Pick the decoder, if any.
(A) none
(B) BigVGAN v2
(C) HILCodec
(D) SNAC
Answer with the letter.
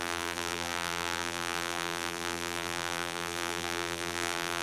B